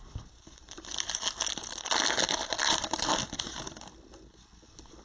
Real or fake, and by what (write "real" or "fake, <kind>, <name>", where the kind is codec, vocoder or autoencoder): real